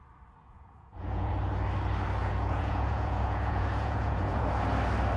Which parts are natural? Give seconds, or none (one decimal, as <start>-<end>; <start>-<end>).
0.0-0.4; 1.3-2.2; 4.4-5.2